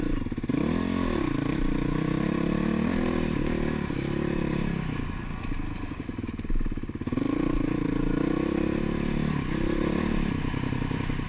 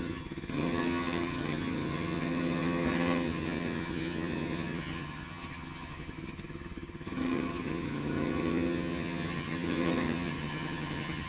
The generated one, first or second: second